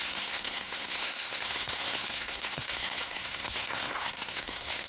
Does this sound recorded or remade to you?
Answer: remade